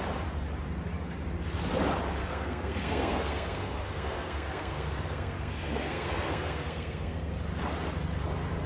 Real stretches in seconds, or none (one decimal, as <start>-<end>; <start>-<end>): 0.0-2.2; 7.3-8.7